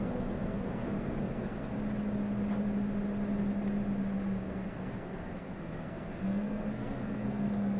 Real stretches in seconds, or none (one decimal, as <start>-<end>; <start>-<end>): 1.7-4.2